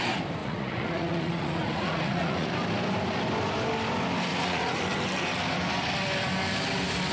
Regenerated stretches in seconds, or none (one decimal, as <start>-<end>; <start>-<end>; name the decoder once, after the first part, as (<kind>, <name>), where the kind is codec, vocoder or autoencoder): 0.4-2.5 (vocoder, Vocos); 4.3-4.8